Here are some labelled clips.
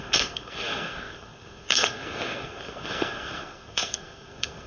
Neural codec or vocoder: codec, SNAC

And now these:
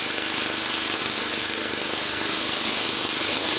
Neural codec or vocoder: codec, SNAC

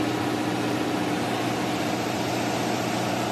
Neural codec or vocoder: none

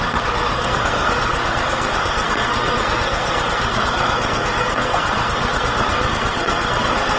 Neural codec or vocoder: codec, SNAC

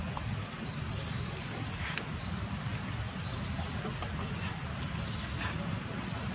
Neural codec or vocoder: none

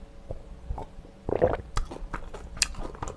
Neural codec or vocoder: none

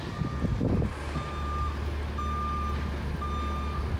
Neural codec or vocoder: none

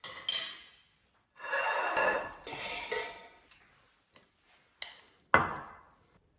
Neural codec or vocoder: none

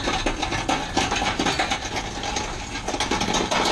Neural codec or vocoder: none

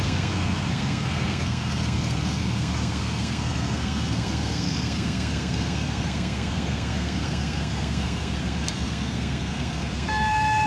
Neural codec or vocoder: codec, SNAC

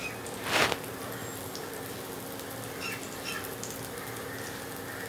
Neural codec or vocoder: none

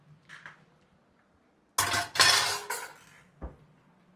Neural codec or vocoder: none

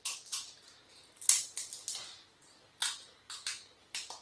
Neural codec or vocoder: none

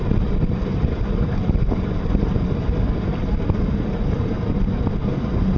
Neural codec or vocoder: none